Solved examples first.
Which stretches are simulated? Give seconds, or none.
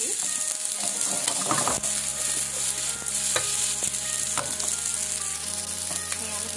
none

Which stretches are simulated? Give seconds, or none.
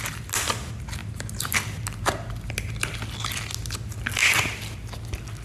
none